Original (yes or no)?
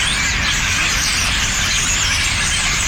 yes